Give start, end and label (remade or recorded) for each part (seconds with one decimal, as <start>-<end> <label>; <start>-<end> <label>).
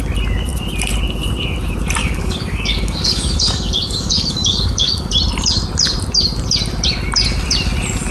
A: 0.0-2.0 recorded; 2.0-5.1 remade; 5.1-8.1 recorded